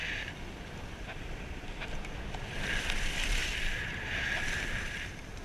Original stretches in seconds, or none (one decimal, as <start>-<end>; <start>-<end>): 2.1-5.4